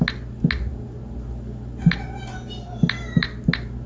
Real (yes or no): yes